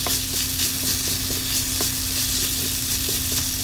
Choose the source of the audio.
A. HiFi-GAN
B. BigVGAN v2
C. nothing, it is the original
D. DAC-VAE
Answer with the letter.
C